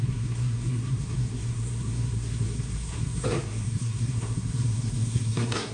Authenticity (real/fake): fake